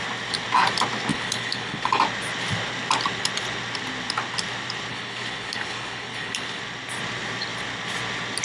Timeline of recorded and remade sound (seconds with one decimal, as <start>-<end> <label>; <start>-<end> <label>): 0.0-1.1 recorded; 1.1-2.0 remade; 2.0-4.9 recorded; 4.9-6.6 remade; 6.6-8.4 recorded

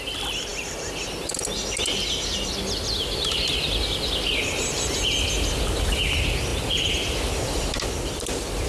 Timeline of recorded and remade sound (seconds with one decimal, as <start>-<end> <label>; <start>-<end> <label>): 0.0-8.7 recorded

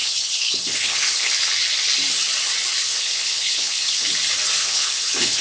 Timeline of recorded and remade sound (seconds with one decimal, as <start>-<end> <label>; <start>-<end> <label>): 0.0-1.3 remade; 1.3-2.8 recorded; 2.8-4.1 remade; 4.1-4.6 recorded; 4.6-5.4 remade

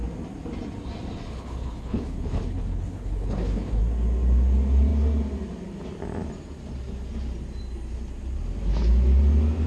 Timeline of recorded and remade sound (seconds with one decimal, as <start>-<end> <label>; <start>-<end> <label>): 0.0-1.3 recorded; 1.3-3.8 remade; 3.8-9.7 recorded

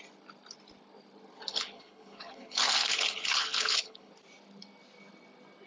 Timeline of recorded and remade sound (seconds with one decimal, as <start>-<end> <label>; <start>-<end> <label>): 0.0-1.5 recorded; 1.5-4.1 remade; 4.1-5.7 recorded

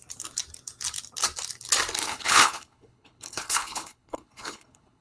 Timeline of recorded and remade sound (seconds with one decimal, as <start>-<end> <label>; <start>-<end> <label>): 0.0-2.0 recorded; 2.0-5.0 remade